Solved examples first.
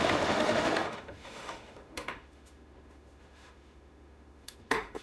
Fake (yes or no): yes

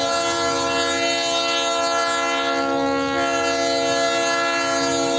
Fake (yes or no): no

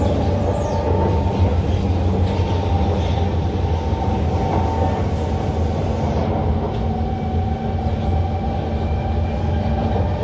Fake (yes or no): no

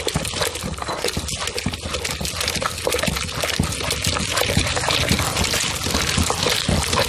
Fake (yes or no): no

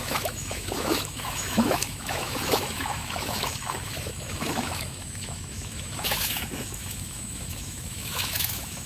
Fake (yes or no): yes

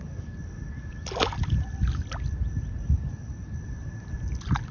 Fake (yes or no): no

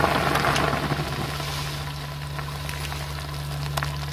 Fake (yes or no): no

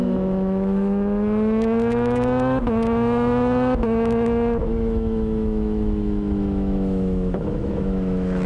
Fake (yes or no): yes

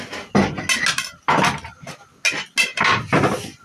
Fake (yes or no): no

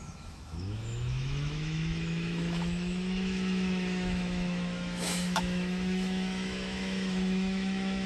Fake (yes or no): yes